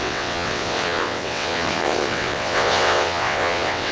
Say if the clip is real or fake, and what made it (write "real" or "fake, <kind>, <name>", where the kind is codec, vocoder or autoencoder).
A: fake, vocoder, WaveNeXt